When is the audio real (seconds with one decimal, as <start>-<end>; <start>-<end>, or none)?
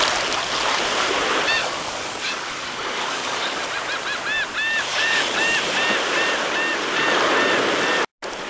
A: 0.0-1.6; 3.6-4.9; 5.4-8.5